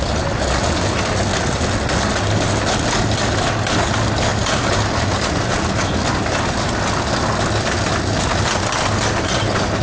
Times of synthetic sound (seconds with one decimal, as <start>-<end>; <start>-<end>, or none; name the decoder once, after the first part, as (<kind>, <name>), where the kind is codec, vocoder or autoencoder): none